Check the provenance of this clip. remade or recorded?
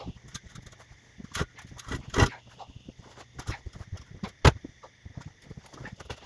recorded